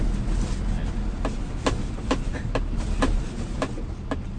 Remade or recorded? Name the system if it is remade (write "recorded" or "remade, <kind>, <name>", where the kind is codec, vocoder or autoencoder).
recorded